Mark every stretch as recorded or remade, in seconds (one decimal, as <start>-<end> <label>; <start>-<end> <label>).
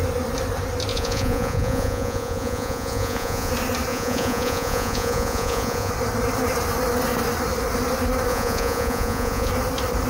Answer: 0.0-0.9 recorded; 0.9-3.5 remade; 3.5-3.9 recorded; 3.9-5.9 remade; 5.9-8.3 recorded; 8.3-9.5 remade; 9.5-10.1 recorded